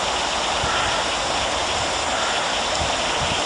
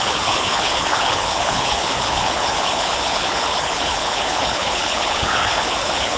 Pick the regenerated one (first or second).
second